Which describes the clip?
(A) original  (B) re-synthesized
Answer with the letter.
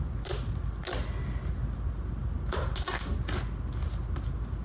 A